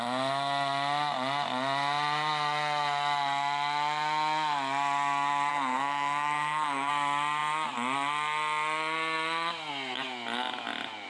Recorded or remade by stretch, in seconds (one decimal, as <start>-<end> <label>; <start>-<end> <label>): 0.0-5.5 recorded; 5.5-6.9 remade; 6.9-11.1 recorded